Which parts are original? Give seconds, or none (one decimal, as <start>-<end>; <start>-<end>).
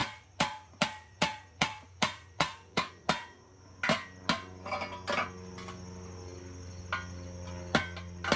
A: 3.5-8.4